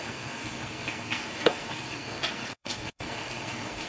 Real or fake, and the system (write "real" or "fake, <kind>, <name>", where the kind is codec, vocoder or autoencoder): fake, codec, SNAC